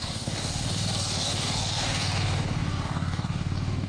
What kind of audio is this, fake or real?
fake